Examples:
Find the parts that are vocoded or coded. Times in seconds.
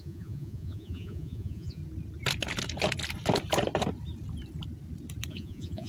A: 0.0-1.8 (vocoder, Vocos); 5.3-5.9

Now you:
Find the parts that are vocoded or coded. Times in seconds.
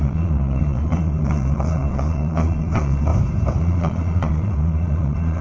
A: 0.0-3.1 (vocoder, Vocos); 3.6-5.4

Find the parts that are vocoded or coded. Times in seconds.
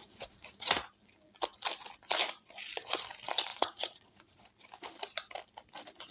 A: 0.0-0.7 (vocoder, Vocos); 3.5-4.4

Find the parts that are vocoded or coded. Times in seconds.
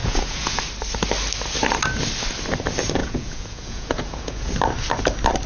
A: 0.0-0.6 (vocoder, Vocos); 3.0-4.5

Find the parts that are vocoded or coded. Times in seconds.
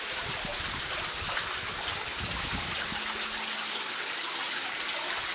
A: none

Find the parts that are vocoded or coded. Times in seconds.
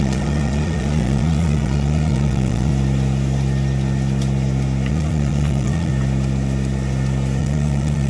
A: 0.0-2.7 (vocoder, Vocos); 4.9-5.9; 7.4-8.1